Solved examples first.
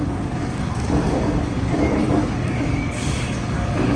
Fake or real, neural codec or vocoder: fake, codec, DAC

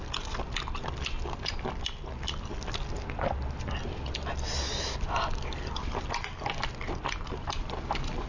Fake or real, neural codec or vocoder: real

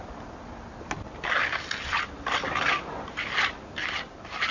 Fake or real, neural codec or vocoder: real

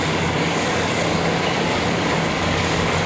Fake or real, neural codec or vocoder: fake, codec, DAC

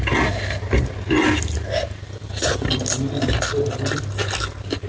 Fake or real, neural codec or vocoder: real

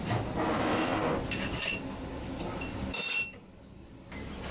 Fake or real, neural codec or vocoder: real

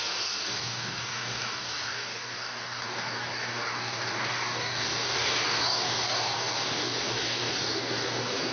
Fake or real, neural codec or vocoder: fake, codec, DAC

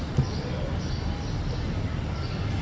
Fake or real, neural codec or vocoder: real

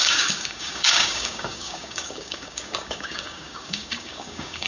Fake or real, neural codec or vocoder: fake, codec, DAC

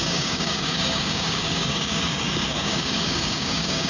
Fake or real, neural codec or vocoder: fake, codec, DAC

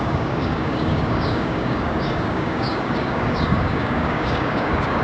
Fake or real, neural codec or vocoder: fake, codec, DAC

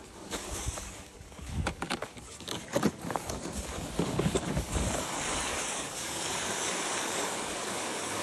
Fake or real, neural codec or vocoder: fake, codec, DAC